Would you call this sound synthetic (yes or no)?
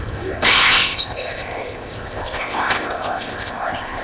yes